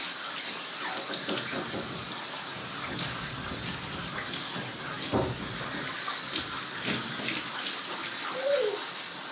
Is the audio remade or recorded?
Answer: recorded